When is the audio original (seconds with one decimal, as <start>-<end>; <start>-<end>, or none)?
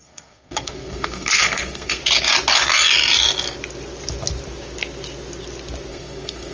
2.0-5.9